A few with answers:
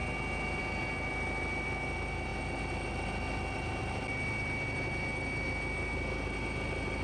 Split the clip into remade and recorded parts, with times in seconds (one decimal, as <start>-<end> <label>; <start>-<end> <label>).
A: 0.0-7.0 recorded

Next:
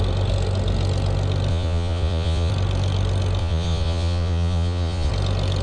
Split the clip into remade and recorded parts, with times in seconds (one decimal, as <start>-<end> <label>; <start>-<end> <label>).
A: 0.0-1.5 recorded; 1.5-2.5 remade; 2.5-3.4 recorded; 3.4-5.1 remade; 5.1-5.6 recorded

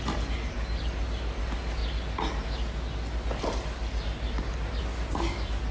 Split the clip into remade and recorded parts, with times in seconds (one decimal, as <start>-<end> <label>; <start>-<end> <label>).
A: 0.0-5.7 recorded

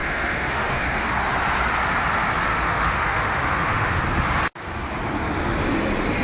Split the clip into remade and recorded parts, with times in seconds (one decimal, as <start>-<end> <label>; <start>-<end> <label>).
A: 0.0-1.1 remade; 1.1-2.5 recorded; 2.5-4.0 remade; 4.0-6.2 recorded